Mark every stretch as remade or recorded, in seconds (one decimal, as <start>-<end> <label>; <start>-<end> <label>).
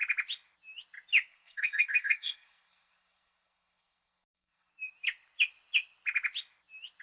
0.0-1.3 recorded; 1.3-4.7 remade; 4.7-7.0 recorded